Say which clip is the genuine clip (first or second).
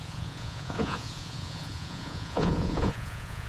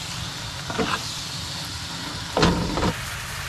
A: second